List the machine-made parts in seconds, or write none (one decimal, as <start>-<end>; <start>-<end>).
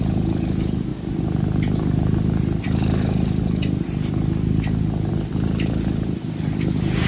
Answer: none